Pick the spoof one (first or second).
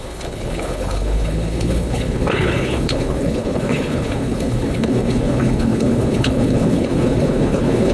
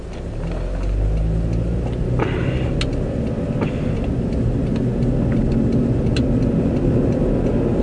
first